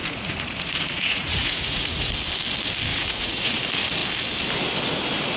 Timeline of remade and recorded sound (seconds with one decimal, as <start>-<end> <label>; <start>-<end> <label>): 0.0-2.1 remade; 2.1-2.9 recorded; 2.9-3.5 remade; 3.5-5.4 recorded